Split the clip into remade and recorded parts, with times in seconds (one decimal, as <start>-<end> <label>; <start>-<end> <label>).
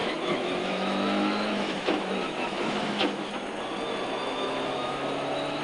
0.0-3.3 remade; 3.3-4.3 recorded; 4.3-5.6 remade